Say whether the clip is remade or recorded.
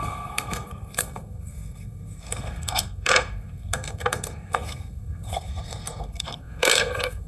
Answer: remade